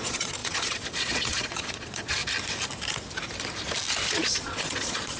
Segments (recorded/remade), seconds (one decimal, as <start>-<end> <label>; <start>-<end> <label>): 0.0-2.2 remade; 2.2-4.1 recorded; 4.1-5.2 remade